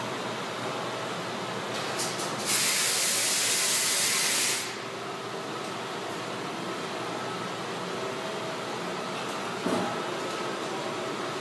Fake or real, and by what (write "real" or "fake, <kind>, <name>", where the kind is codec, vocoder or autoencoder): real